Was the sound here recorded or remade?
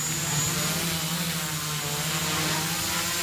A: recorded